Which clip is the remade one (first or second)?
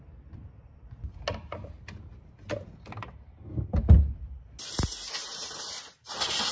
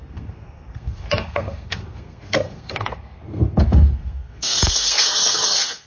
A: second